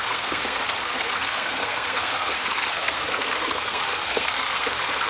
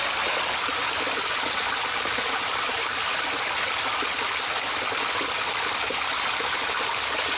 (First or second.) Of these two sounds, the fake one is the first